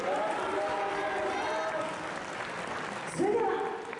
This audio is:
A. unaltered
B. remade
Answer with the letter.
A